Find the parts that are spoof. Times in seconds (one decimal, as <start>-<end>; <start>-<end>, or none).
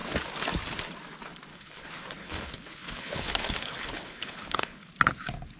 1.5-4.9